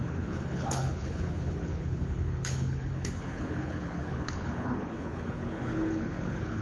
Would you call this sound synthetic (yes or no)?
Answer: yes